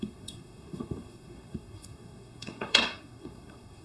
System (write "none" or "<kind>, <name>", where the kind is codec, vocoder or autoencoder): codec, SNAC